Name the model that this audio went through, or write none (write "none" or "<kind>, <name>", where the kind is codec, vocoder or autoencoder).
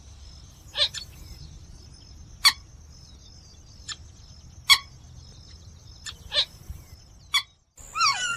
none